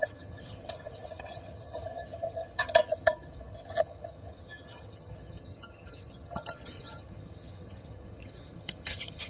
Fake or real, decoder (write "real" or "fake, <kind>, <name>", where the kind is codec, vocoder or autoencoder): fake, vocoder, HiFi-GAN